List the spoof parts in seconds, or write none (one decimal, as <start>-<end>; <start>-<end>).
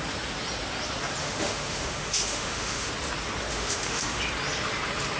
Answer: 1.2-2.9; 3.5-4.2